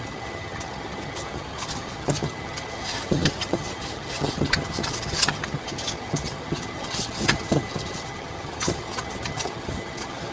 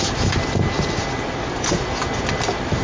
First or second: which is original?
second